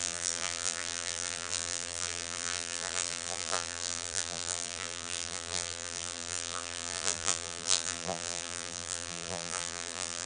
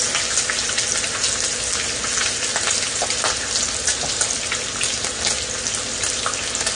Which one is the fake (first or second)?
first